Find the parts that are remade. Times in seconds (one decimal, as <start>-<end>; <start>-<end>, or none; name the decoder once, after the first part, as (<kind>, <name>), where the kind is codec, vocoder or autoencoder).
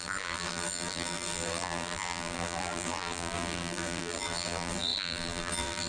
0.0-5.9 (vocoder, BigVGAN v2)